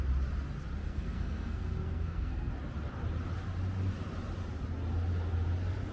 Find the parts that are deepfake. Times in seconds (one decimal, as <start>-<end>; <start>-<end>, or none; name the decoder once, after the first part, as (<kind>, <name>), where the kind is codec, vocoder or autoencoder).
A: 0.8-2.5 (codec, SNAC)